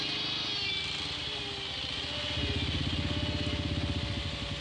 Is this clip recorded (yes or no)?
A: yes